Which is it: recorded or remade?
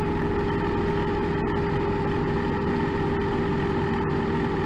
recorded